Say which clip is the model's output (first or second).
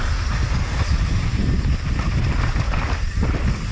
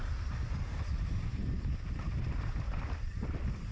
second